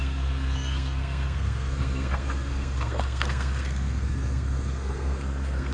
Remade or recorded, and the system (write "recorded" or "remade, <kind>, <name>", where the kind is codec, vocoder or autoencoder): remade, codec, SNAC